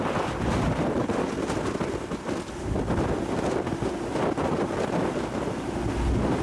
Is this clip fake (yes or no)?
no